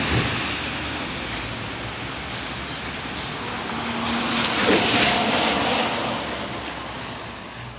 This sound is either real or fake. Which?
real